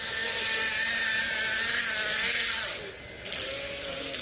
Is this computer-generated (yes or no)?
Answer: no